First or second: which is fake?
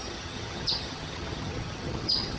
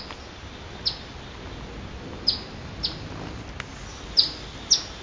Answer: first